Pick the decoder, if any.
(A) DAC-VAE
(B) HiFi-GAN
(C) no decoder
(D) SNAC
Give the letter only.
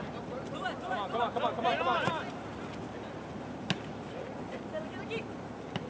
C